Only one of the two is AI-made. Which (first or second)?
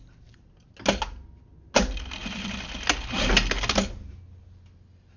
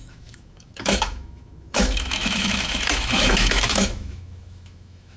second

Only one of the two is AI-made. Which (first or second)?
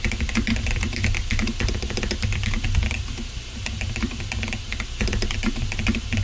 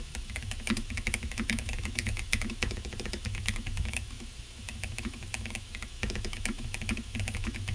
second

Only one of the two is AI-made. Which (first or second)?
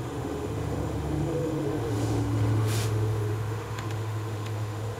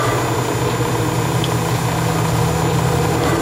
first